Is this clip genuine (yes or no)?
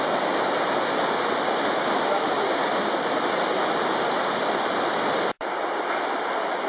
yes